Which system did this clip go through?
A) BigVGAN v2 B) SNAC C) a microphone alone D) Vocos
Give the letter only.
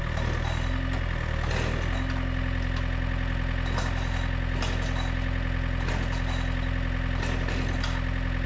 C